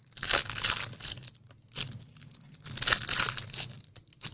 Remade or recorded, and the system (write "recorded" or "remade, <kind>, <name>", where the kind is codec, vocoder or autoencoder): recorded